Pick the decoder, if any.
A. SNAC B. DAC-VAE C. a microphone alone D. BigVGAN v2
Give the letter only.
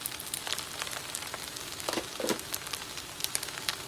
C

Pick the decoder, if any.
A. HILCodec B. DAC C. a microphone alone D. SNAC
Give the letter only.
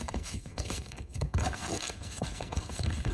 D